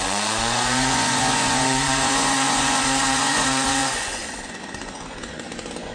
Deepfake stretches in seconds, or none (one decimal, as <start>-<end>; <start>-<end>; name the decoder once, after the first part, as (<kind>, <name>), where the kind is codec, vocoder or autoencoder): 0.0-5.9 (vocoder, Vocos)